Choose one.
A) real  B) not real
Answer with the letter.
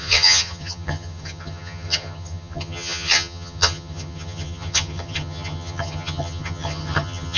B